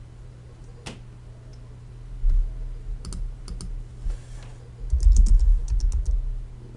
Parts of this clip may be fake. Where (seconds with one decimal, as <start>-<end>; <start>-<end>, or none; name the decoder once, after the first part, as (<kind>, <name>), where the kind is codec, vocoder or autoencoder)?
none